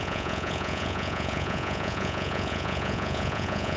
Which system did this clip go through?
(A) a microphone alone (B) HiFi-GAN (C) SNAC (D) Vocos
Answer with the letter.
D